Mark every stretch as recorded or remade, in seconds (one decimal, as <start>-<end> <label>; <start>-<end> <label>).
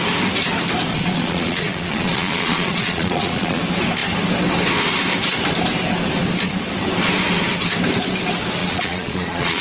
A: 0.0-0.9 recorded; 0.9-3.6 remade; 3.6-8.6 recorded; 8.6-9.6 remade